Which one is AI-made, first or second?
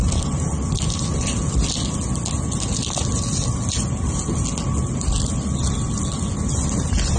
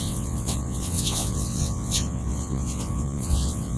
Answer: second